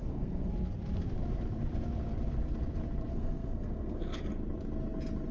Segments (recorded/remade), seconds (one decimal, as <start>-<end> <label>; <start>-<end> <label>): 0.0-0.5 remade; 0.5-3.1 recorded; 3.1-4.2 remade; 4.2-5.3 recorded